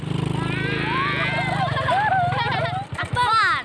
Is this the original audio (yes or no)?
yes